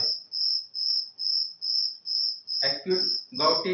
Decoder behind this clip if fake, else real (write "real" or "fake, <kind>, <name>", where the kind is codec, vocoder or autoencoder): real